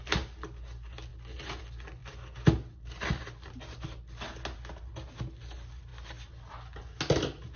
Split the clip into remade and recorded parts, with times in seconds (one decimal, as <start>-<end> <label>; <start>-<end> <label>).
0.0-7.6 recorded